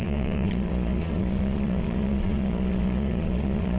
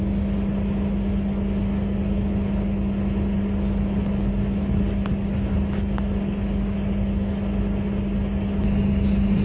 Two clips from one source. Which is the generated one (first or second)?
first